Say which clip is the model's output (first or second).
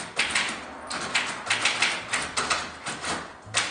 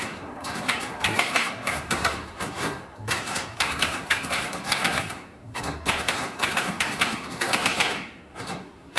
second